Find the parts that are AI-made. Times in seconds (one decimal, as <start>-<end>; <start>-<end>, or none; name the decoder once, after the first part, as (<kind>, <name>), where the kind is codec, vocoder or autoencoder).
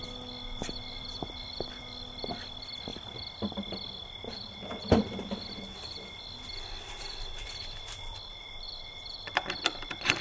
1.0-10.2 (vocoder, BigVGAN v2)